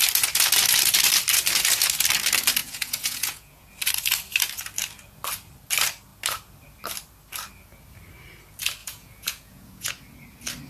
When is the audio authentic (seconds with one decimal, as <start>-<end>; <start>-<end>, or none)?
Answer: 0.0-2.6; 3.7-8.8; 9.9-10.7